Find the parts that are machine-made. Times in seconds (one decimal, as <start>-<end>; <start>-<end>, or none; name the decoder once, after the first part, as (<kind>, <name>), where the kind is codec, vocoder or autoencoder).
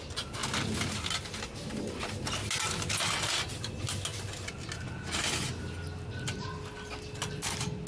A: none